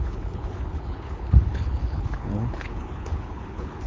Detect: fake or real fake